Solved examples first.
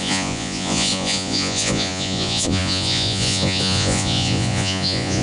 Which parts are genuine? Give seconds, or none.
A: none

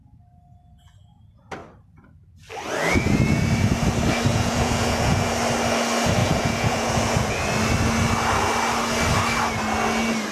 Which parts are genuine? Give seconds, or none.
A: 0.0-4.3; 5.3-6.2; 7.3-10.3

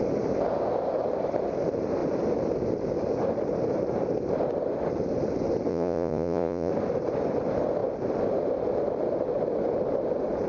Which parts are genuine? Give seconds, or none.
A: 0.0-5.7; 6.7-10.5

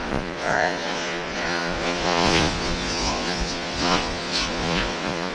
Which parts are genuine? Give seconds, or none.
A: none

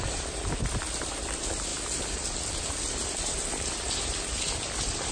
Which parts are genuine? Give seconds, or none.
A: 0.0-5.1

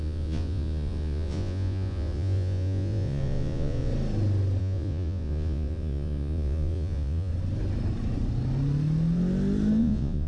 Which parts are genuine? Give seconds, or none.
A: 3.9-4.6; 7.3-9.8